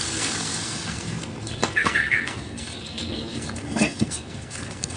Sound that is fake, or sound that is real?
fake